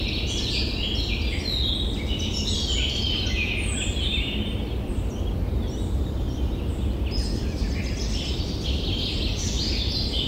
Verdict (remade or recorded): recorded